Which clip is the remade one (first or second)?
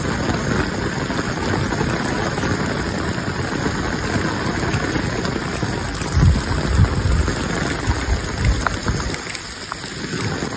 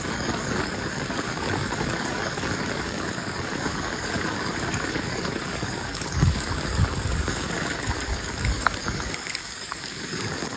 second